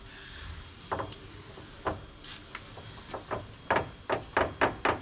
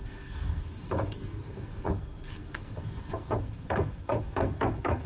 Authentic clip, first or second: first